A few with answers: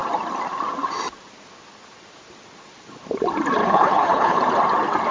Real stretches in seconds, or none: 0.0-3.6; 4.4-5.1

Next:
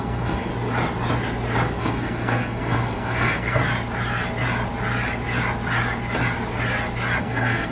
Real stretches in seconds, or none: 0.5-1.8; 3.6-7.2

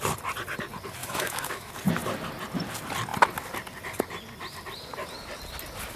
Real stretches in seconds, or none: 0.0-1.0; 1.7-6.0

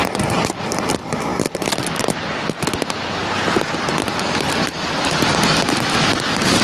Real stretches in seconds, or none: 0.9-1.3; 5.3-6.6

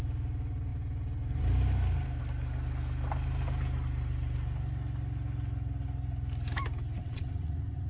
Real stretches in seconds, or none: 0.0-7.0